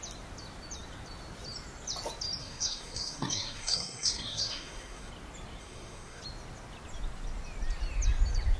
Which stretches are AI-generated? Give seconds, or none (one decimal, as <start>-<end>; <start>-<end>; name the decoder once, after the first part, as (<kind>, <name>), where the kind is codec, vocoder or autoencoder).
2.4-5.1 (codec, SNAC); 5.6-6.2